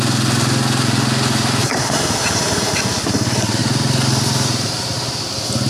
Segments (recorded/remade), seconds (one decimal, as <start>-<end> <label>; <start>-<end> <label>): 0.0-1.6 recorded; 1.6-2.7 remade; 2.7-3.6 recorded; 3.6-4.7 remade; 4.7-5.7 recorded